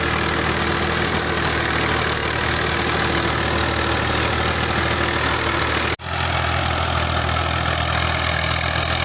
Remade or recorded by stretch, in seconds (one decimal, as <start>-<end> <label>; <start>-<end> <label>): 0.0-9.0 recorded